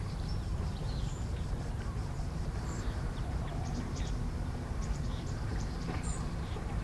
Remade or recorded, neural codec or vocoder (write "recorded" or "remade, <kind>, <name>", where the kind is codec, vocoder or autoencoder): remade, vocoder, BigVGAN v2